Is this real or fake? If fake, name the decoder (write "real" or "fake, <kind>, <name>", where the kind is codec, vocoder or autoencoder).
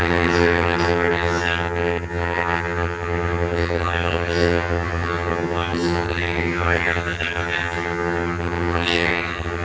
fake, vocoder, HiFi-GAN